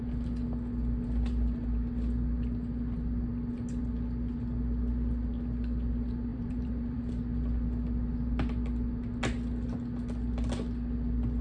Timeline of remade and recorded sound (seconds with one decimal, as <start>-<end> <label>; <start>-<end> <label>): 0.0-6.3 recorded; 6.3-7.1 remade; 7.1-11.4 recorded